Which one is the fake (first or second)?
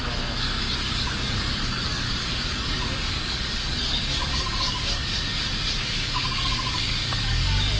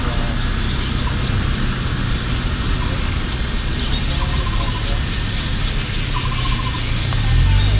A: first